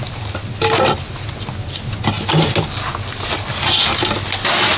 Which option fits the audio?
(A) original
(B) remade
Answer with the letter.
A